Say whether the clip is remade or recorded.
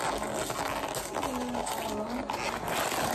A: recorded